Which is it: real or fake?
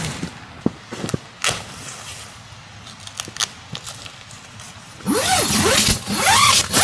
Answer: real